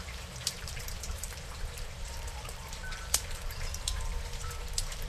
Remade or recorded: remade